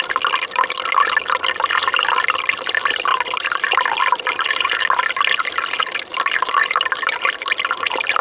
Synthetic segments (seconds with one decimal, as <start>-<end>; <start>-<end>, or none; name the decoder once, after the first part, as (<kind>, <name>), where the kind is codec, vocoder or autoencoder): 3.1-3.7 (vocoder, BigVGAN v2); 6.1-7.4